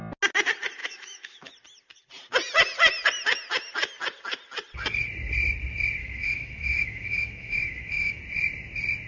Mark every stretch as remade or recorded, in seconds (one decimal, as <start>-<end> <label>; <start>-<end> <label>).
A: 0.0-0.8 recorded; 0.8-1.5 remade; 1.5-6.0 recorded; 6.0-8.2 remade; 8.2-9.1 recorded